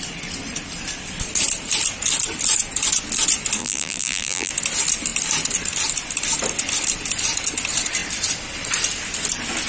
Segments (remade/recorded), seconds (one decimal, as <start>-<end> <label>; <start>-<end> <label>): 0.0-3.6 recorded; 3.6-4.5 remade; 4.5-9.7 recorded